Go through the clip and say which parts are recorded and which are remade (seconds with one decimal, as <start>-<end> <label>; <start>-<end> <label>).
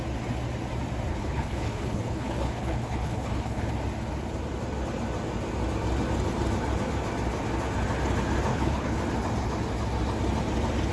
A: 0.0-1.1 recorded; 1.1-3.7 remade; 3.7-8.5 recorded; 8.5-9.0 remade; 9.0-10.9 recorded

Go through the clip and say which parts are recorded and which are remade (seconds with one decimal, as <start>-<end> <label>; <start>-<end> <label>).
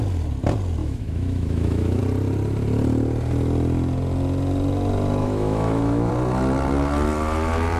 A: 0.0-0.8 recorded; 0.8-2.0 remade; 2.0-5.2 recorded; 5.2-6.1 remade; 6.1-7.8 recorded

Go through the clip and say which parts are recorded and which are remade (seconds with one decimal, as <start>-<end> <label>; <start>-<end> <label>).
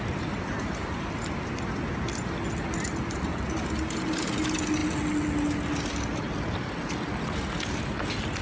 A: 0.0-8.4 recorded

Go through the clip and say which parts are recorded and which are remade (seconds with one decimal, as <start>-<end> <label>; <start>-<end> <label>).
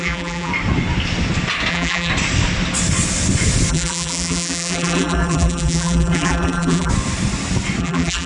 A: 0.0-0.5 remade; 0.5-1.7 recorded; 1.7-2.1 remade; 2.1-3.7 recorded; 3.7-6.9 remade; 6.9-7.8 recorded; 7.8-8.3 remade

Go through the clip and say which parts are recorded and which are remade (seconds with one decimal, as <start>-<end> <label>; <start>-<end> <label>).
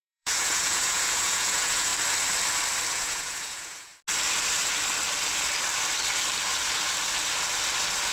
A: 0.0-1.9 remade; 1.9-2.9 recorded; 2.9-3.9 remade; 3.9-8.1 recorded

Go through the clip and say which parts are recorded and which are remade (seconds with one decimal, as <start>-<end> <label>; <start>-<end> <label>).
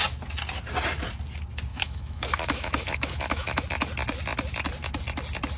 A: 0.0-1.7 recorded; 1.7-3.6 remade; 3.6-5.6 recorded